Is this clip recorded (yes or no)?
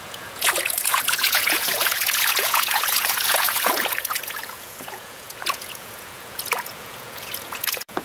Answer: no